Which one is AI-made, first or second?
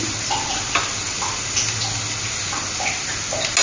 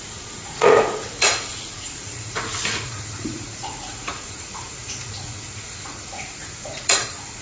second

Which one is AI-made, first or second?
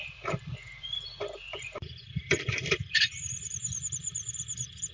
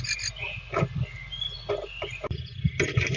first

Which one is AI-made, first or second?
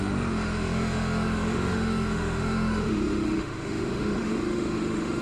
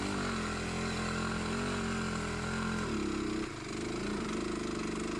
first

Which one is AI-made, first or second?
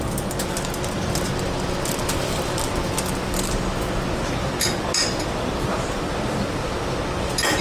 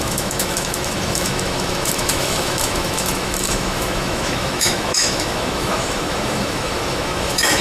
second